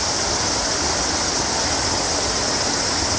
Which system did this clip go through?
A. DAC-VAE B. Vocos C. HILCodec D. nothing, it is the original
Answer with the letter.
D